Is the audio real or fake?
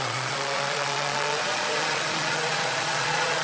fake